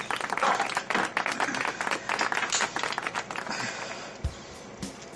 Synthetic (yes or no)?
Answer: no